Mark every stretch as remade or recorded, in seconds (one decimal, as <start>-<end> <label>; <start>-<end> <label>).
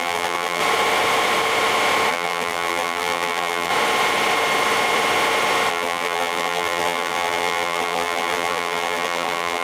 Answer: 0.0-0.6 remade; 0.6-2.1 recorded; 2.1-3.7 remade; 3.7-5.7 recorded; 5.7-9.6 remade